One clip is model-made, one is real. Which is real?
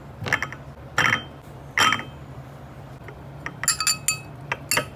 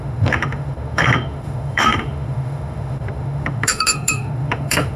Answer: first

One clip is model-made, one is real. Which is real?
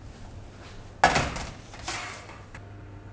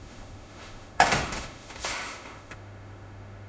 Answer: first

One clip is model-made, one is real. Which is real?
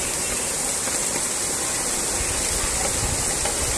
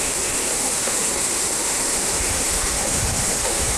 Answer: first